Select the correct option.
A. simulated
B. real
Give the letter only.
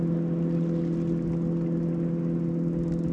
B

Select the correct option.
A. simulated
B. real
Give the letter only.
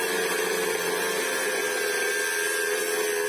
B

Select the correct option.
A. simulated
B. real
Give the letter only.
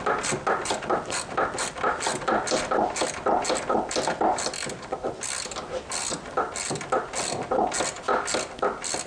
B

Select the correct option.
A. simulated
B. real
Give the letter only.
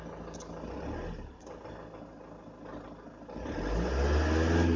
B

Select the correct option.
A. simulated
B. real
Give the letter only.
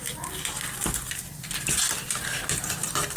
B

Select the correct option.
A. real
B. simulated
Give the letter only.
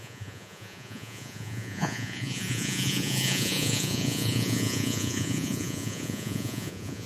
B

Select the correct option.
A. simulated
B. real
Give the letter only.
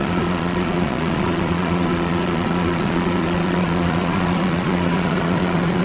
A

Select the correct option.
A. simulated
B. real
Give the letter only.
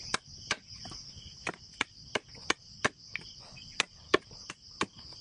B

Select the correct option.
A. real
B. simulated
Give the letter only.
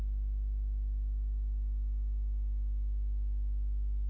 A